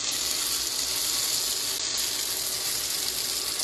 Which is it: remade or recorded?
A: recorded